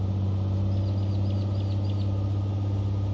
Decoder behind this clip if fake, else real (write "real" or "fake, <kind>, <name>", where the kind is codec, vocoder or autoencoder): real